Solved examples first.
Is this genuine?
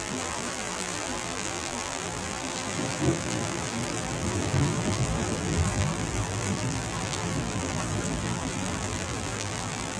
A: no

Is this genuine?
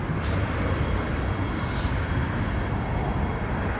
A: yes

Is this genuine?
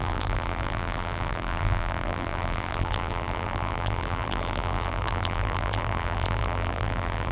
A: no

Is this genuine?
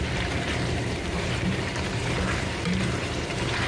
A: no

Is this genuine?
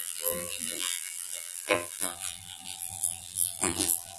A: no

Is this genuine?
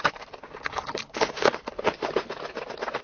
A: yes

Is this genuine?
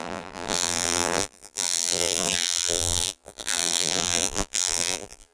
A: no